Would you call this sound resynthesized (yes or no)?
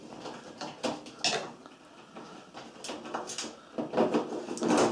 no